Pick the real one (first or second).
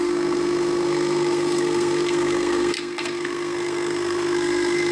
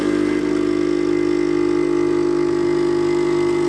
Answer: second